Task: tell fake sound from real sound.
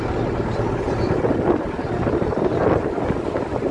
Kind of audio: real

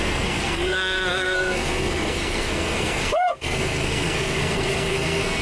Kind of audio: fake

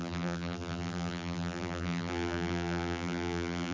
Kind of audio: fake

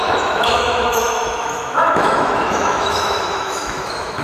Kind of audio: fake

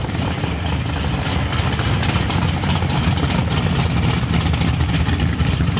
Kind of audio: real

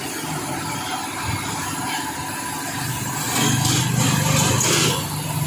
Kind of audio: real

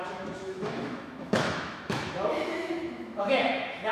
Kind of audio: fake